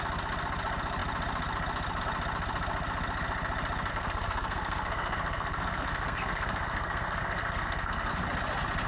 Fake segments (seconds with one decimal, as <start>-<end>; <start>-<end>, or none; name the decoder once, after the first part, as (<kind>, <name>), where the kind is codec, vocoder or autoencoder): 3.9-8.1 (codec, SNAC)